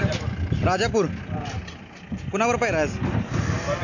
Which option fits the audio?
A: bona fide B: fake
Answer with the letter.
A